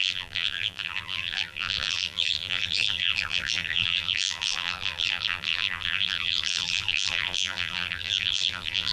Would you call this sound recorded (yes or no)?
no